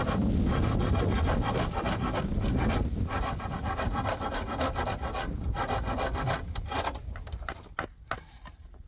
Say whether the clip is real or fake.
real